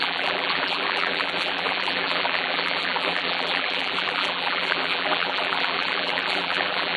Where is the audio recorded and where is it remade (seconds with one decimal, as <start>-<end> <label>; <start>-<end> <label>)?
0.0-7.0 remade